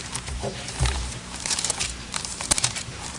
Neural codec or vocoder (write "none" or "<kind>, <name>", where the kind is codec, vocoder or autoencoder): vocoder, BigVGAN v2